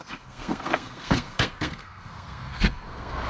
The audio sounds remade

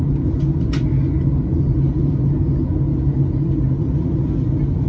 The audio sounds recorded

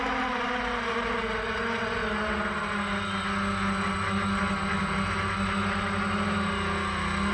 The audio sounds recorded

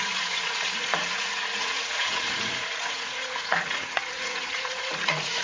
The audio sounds remade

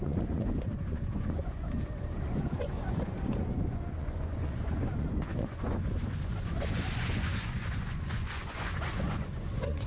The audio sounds remade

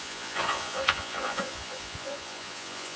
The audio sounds remade